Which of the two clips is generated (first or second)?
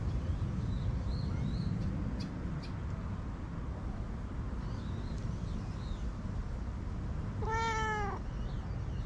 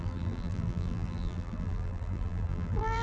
second